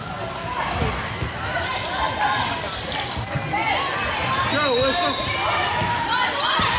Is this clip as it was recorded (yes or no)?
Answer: yes